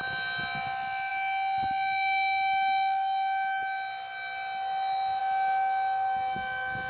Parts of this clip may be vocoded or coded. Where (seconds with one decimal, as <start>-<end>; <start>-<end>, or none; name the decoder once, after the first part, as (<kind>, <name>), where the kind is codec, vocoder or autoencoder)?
none